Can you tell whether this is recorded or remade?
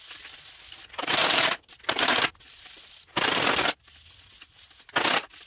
recorded